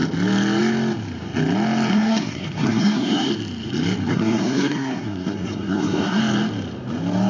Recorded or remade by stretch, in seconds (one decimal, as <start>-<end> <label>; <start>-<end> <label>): 0.0-1.9 recorded; 1.9-3.3 remade; 3.3-4.1 recorded; 4.1-6.2 remade; 6.2-7.3 recorded